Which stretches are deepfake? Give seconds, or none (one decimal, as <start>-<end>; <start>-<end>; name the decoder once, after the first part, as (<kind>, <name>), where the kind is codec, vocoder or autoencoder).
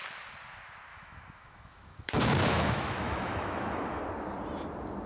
0.9-4.0 (autoencoder, DAC-VAE)